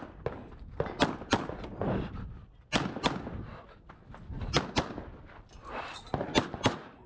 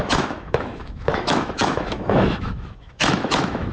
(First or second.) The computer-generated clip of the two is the second